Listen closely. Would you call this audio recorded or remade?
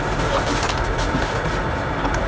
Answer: recorded